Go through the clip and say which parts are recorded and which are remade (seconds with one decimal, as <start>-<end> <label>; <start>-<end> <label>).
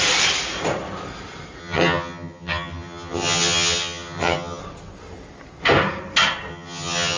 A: 0.0-1.6 recorded; 1.6-4.6 remade; 4.6-6.5 recorded; 6.5-7.2 remade